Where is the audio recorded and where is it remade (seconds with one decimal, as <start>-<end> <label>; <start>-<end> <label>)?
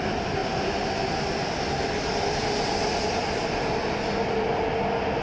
0.0-5.2 recorded